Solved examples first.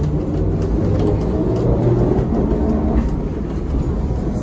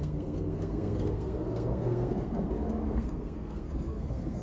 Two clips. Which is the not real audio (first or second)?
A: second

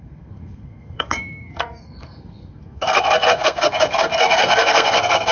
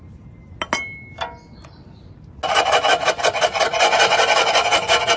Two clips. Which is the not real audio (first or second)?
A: first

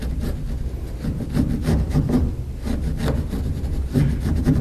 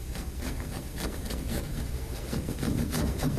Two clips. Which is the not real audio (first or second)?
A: second